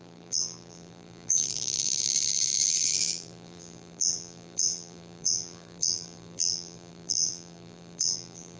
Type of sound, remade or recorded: remade